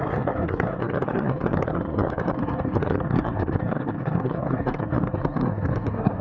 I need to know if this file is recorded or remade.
remade